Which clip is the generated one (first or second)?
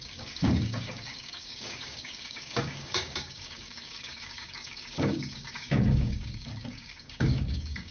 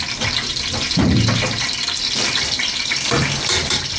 first